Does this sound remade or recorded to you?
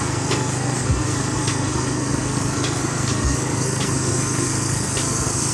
remade